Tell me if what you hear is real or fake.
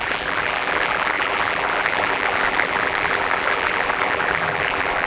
fake